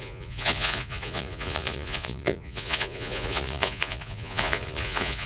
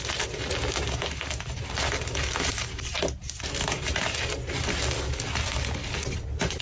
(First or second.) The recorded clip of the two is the second